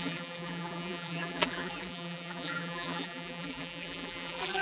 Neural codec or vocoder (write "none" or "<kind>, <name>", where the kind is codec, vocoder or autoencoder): vocoder, BigVGAN v2